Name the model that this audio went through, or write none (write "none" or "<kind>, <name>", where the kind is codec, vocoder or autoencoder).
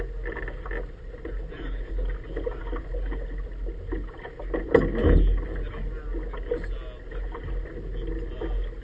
none